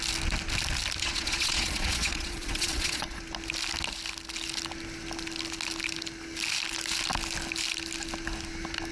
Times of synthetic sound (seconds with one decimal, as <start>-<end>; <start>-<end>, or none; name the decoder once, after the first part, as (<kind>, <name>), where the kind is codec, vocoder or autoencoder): 1.0-3.2 (vocoder, Vocos)